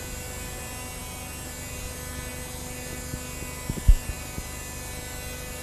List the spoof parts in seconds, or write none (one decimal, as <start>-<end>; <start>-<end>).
none